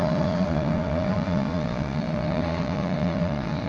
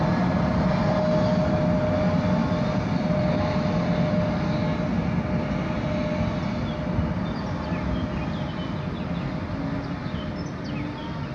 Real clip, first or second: second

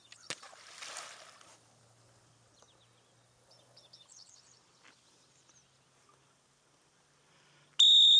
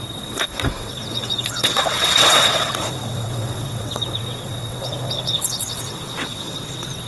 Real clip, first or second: first